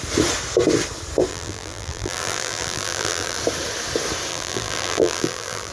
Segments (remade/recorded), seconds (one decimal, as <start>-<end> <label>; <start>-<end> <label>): 0.0-1.3 recorded; 1.3-3.4 remade; 3.4-4.3 recorded; 4.3-5.7 remade